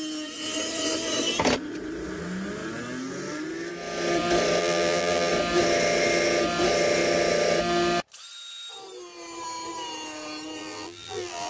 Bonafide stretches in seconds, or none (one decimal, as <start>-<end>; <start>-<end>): 0.0-4.6; 5.3-10.6

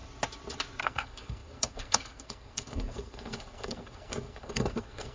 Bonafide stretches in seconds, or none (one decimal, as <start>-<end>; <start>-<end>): 0.0-0.8

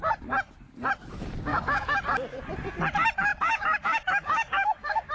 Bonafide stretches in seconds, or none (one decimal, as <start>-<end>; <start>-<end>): 0.0-1.5; 2.0-3.3

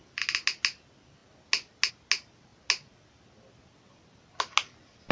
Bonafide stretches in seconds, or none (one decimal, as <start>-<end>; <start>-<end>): 0.0-5.1

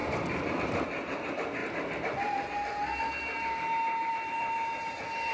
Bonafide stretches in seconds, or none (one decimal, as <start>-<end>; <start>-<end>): 1.6-4.1

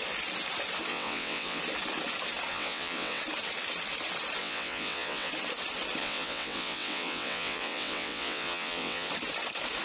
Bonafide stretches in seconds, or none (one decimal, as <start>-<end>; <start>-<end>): 0.0-0.9; 1.6-2.5; 3.2-4.4; 5.3-6.0; 9.1-9.8

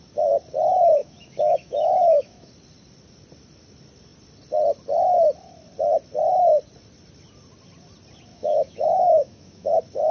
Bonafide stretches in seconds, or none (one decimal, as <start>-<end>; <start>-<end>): 0.0-1.0; 2.5-8.3; 9.7-10.1